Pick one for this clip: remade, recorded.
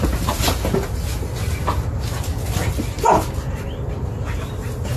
recorded